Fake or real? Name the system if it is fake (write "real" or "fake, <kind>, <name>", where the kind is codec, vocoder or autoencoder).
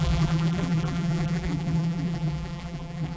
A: fake, vocoder, BigVGAN v2